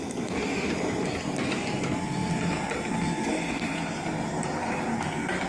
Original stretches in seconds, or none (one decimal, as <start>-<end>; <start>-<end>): 0.0-5.5

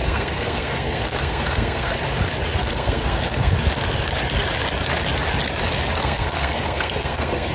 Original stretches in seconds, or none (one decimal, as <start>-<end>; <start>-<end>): 1.9-2.6; 3.6-6.0

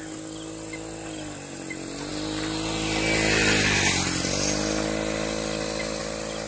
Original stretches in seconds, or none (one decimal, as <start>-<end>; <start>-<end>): 0.0-6.5

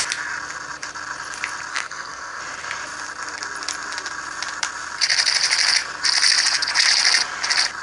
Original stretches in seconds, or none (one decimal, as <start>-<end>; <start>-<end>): 0.0-1.7; 2.4-7.8

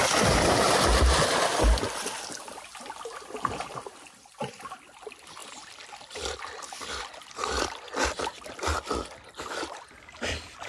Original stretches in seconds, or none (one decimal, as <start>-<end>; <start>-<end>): 0.0-10.7

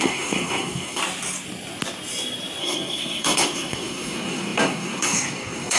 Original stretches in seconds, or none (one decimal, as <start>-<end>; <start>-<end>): 1.0-2.6

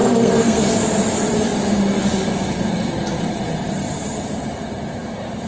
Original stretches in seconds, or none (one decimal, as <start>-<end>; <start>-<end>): 0.7-5.5

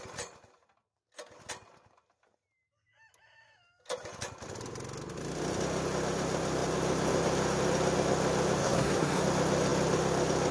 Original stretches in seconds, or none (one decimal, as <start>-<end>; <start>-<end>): 0.0-8.6; 9.2-10.5